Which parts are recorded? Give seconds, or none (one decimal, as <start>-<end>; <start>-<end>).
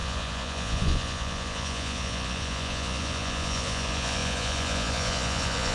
none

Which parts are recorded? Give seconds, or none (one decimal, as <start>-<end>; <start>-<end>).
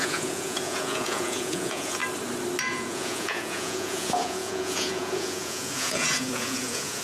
2.0-2.7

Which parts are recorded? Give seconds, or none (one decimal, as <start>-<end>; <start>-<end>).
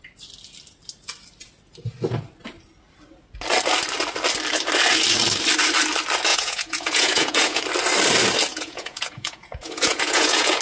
0.0-6.3; 7.6-8.5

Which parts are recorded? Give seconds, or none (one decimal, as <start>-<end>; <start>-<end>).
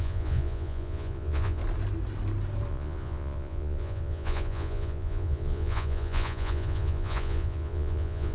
1.6-2.7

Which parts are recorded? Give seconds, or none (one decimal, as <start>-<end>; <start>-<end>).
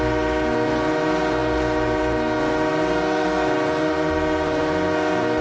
0.0-5.4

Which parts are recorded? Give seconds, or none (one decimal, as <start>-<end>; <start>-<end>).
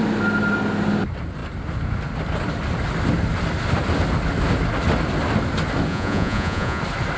0.0-5.9; 6.8-7.2